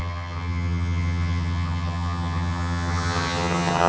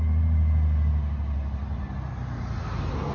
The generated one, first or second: first